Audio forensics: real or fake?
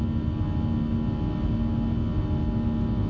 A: real